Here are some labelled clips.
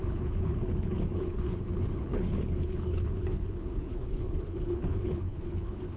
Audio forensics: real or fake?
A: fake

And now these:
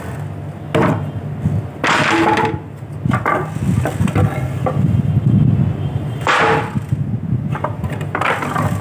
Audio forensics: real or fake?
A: real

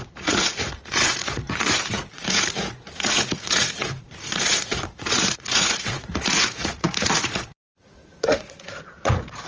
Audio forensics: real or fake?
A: fake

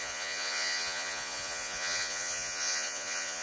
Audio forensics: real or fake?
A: fake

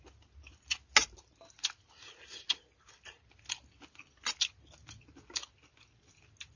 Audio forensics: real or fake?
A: real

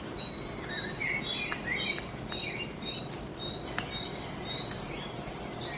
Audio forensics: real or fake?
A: real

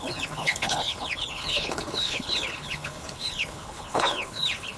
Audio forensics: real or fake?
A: fake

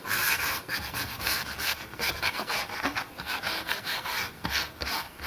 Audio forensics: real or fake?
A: fake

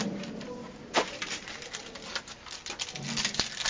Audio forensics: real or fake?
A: real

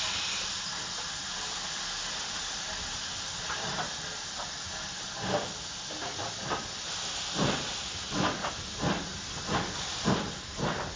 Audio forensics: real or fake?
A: real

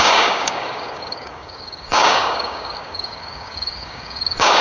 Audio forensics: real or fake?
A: fake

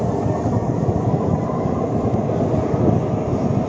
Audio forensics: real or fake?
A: real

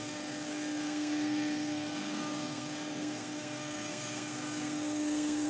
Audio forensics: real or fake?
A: fake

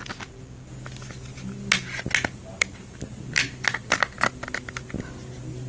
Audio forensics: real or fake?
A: real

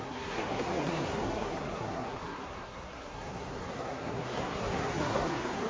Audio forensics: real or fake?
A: fake